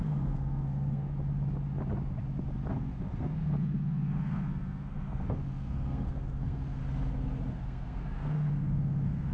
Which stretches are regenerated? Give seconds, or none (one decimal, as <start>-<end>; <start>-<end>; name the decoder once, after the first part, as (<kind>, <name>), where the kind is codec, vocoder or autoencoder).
0.0-1.1 (codec, SNAC); 2.7-6.8; 7.5-9.3